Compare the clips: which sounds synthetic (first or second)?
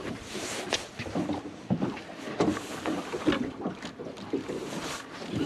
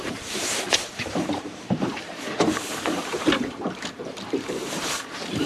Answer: second